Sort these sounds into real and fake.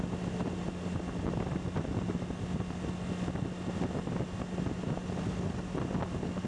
real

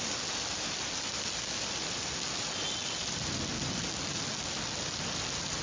real